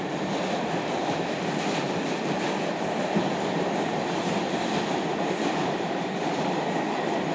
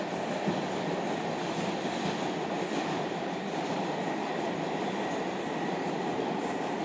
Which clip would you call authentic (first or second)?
second